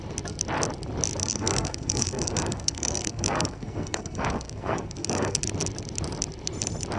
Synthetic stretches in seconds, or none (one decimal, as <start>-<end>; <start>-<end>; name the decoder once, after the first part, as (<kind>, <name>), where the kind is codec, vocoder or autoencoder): 1.2-5.4 (codec, SNAC)